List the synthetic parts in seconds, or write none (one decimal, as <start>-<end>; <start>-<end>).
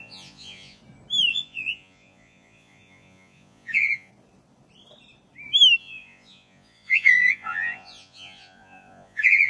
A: 0.0-0.8; 1.3-4.1; 5.8-9.5